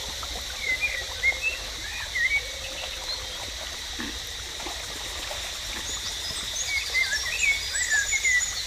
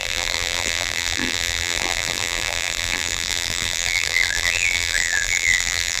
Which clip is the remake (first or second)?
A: second